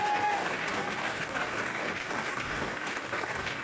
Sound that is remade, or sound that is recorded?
remade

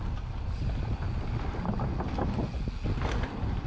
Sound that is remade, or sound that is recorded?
recorded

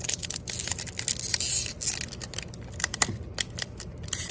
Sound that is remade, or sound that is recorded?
recorded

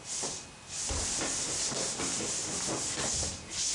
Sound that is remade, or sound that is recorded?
recorded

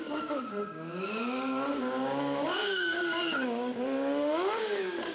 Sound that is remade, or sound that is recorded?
remade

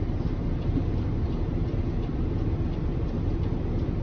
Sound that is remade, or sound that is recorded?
recorded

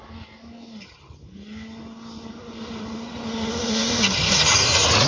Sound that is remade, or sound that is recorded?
recorded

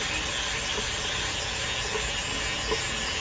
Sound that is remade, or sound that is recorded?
recorded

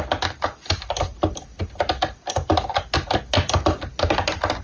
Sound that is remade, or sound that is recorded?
recorded